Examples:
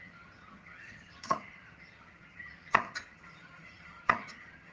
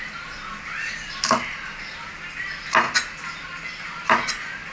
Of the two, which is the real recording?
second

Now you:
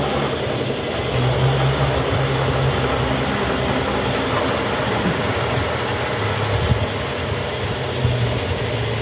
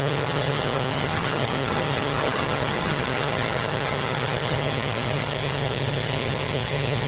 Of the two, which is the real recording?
first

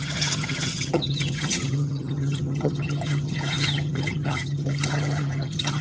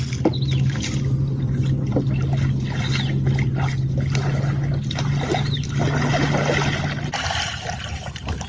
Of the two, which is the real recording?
second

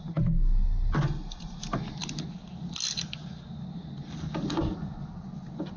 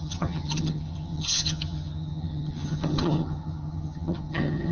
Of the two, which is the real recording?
first